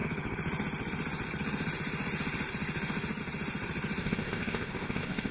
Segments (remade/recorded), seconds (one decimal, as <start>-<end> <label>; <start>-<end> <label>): 0.0-4.0 recorded; 4.0-5.3 remade